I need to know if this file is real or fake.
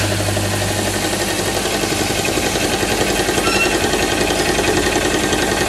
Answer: real